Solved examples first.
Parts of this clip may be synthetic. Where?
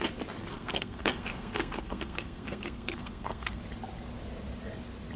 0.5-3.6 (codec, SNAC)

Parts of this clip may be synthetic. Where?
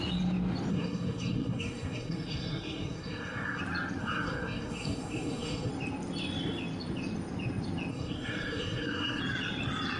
0.7-3.6 (codec, SNAC); 4.0-5.7; 7.9-9.2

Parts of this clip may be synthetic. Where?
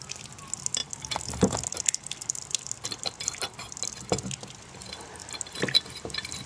none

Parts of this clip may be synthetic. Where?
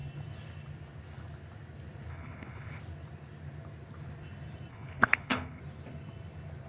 2.1-2.8 (codec, HILCodec); 4.7-5.6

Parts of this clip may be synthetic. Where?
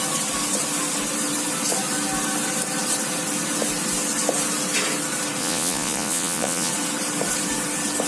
5.4-6.7 (vocoder, Vocos)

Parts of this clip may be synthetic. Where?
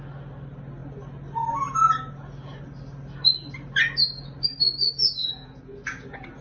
5.2-6.4 (vocoder, Vocos)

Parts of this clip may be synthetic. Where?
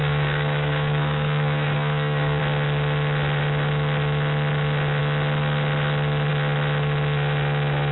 0.0-2.4 (codec, DAC)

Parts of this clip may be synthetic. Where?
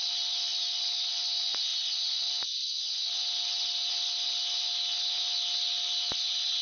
none